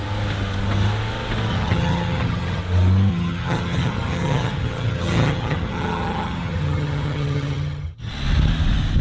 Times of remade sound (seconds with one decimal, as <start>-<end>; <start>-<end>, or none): 1.5-2.6; 3.1-8.1